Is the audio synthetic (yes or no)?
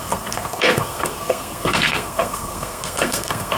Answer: yes